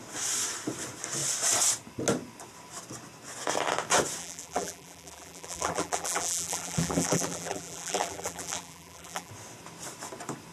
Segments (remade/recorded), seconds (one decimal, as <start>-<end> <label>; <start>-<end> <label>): 0.0-4.2 recorded; 4.2-9.3 remade; 9.3-10.5 recorded